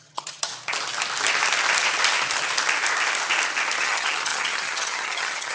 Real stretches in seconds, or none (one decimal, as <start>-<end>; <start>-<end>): 0.5-3.8